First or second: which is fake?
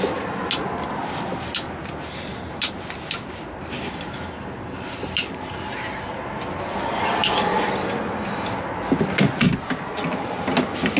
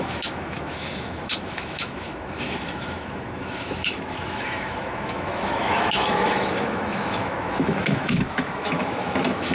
second